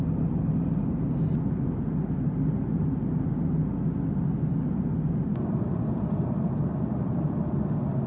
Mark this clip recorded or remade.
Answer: recorded